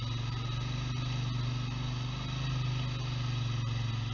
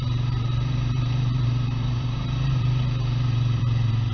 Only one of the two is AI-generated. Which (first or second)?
second